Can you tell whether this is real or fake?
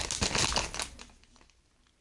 real